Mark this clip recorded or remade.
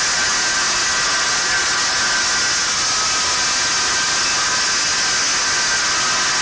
recorded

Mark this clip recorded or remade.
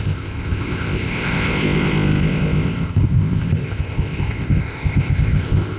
remade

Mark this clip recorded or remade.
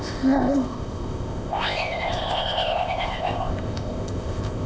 remade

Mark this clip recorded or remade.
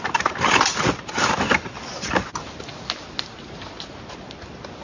recorded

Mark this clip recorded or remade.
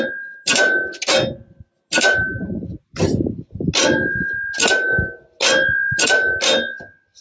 recorded